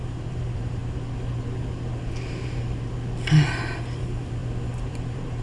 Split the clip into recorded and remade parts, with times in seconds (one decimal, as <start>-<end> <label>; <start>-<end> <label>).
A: 0.0-0.8 remade; 0.8-4.0 recorded; 4.0-4.4 remade; 4.4-4.9 recorded; 4.9-5.4 remade